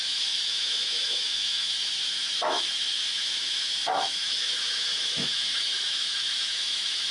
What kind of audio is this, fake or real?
fake